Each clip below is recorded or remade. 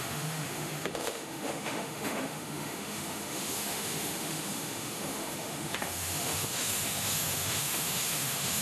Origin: remade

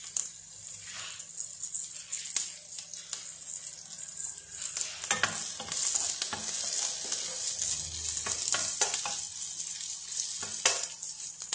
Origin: recorded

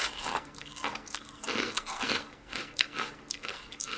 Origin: remade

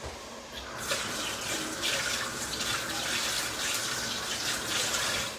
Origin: recorded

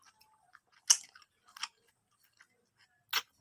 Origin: recorded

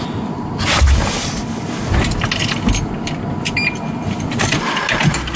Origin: recorded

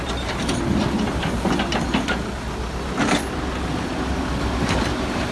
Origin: recorded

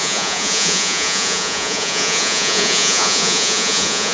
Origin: remade